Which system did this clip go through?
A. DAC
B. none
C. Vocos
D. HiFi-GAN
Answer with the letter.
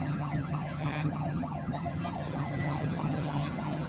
D